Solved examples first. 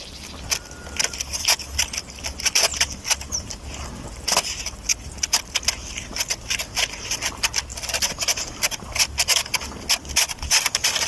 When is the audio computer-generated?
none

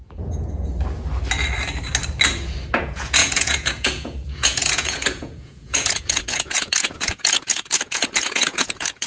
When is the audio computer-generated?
0.0-0.7 (vocoder, Vocos); 2.7-9.1

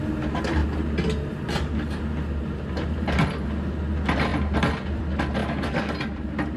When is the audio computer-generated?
5.4-5.9 (codec, DAC)

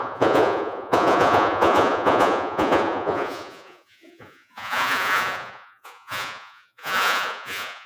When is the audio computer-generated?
0.0-7.9 (vocoder, Vocos)

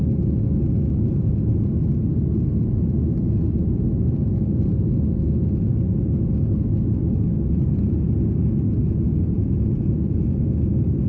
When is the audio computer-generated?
9.1-10.4 (vocoder, Vocos)